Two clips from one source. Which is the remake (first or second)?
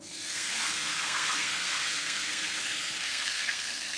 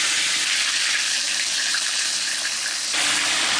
first